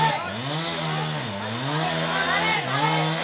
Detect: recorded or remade recorded